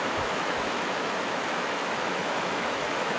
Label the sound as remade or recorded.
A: remade